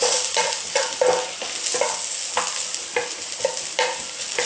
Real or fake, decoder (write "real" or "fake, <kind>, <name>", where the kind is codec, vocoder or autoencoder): real